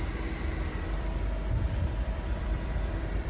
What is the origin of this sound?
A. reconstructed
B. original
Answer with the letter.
A